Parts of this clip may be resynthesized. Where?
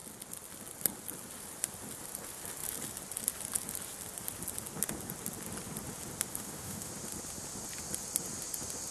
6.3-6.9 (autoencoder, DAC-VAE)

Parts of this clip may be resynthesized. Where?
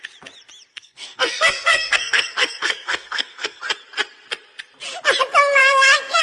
0.7-3.6 (codec, SNAC); 5.6-6.2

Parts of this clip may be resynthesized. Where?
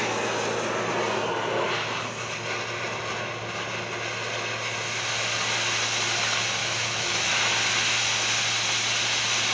6.6-7.3 (autoencoder, DAC-VAE)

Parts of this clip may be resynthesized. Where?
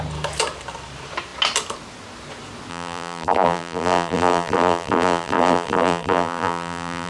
2.7-7.1 (vocoder, BigVGAN v2)